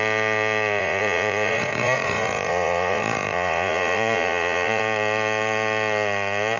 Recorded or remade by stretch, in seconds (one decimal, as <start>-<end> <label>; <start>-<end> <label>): 0.0-0.8 recorded; 0.8-4.8 remade; 4.8-6.6 recorded